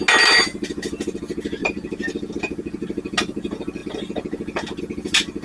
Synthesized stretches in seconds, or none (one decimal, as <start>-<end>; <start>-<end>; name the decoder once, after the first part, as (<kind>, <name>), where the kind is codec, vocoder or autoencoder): 1.6-2.3 (vocoder, BigVGAN v2)